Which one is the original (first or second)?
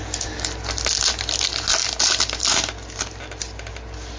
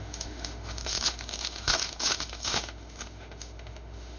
first